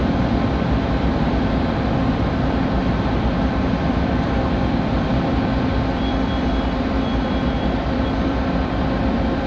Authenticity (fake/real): fake